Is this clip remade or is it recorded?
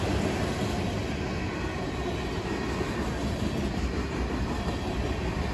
recorded